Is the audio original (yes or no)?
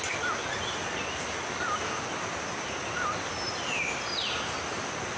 yes